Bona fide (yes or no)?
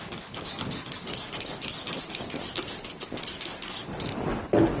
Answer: yes